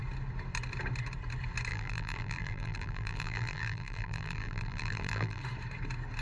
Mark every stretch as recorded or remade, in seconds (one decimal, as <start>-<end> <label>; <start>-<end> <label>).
0.0-1.7 recorded; 1.7-5.4 remade; 5.4-6.2 recorded